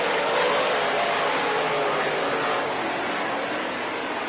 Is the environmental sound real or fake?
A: real